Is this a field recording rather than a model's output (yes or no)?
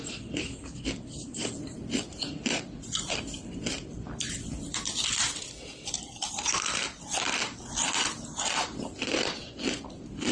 no